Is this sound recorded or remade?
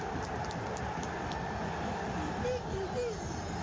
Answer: recorded